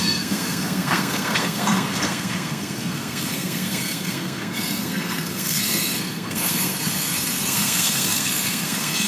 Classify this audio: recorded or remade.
remade